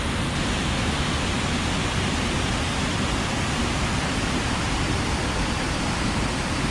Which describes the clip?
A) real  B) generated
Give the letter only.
A